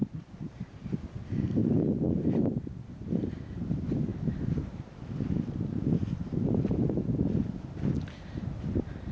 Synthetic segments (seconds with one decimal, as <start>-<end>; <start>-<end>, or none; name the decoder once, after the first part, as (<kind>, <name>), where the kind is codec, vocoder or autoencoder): 0.0-0.9 (vocoder, BigVGAN v2); 1.6-2.3; 4.1-5.0; 6.0-6.7